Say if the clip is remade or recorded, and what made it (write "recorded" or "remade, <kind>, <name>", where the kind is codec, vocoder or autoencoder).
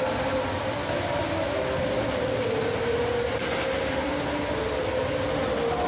recorded